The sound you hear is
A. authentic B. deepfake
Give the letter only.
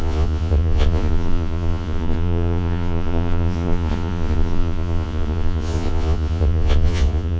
B